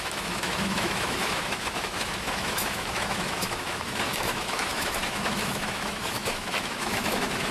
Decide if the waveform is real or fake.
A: fake